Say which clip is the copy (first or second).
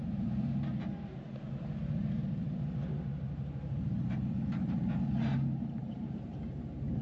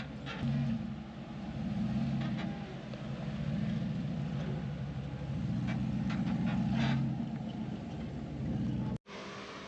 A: first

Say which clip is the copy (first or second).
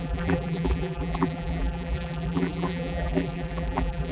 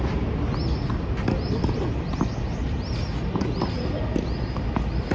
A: first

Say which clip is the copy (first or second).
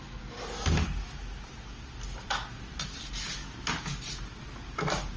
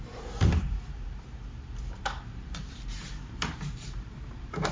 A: second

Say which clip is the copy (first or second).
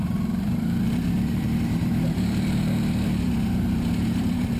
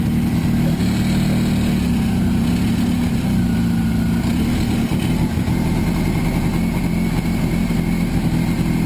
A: first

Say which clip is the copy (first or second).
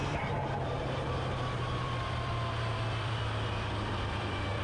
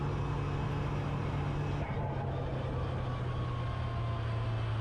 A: first